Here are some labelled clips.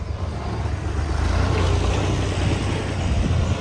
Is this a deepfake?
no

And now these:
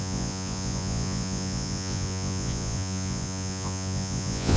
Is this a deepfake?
yes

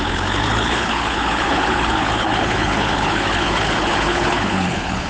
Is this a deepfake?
yes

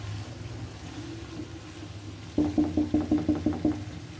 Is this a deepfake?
no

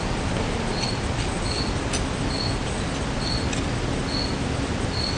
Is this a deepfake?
no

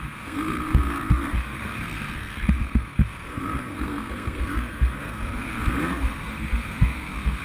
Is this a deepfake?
yes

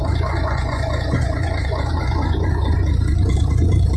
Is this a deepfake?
yes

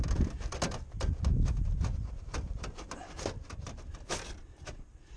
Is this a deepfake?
no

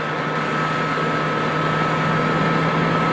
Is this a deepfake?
no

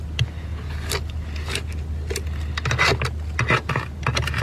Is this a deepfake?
no